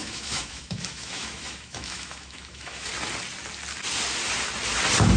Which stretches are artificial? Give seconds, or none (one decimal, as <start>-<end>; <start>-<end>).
0.0-2.9